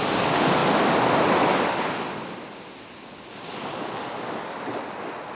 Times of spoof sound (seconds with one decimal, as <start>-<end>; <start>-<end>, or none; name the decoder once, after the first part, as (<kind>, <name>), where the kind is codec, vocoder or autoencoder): none